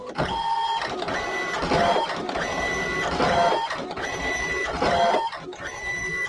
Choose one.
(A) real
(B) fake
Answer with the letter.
A